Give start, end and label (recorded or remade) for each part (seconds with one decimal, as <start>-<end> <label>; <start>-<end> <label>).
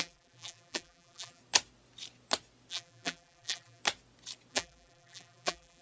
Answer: 0.0-1.4 remade; 1.4-2.7 recorded; 2.7-3.8 remade; 3.8-4.5 recorded; 4.5-5.8 remade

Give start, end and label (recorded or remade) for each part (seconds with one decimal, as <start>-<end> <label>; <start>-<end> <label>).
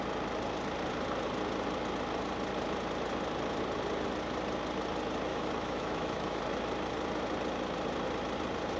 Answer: 0.0-5.3 recorded; 5.3-6.4 remade; 6.4-8.8 recorded